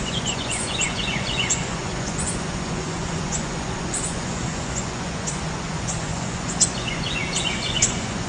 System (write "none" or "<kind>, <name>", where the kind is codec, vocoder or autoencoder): vocoder, Vocos